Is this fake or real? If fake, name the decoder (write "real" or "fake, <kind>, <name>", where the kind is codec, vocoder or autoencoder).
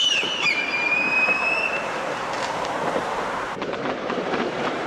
fake, vocoder, BigVGAN v2